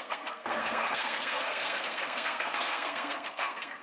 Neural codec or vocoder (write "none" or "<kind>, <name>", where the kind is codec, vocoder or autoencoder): codec, SNAC